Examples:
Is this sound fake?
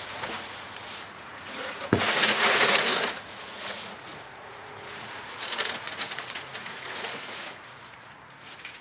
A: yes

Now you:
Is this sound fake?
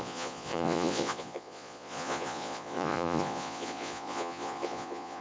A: yes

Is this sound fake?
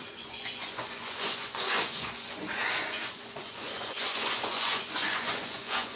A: yes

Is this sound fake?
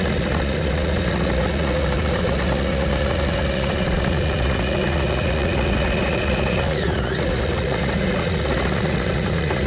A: yes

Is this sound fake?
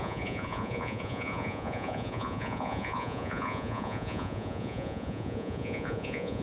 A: yes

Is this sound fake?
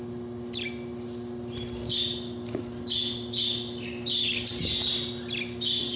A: no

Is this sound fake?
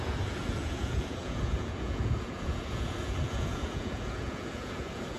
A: yes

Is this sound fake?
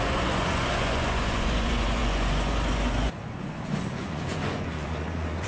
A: yes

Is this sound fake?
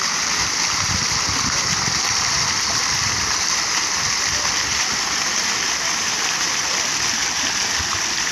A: no